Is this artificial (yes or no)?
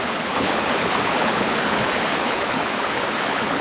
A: yes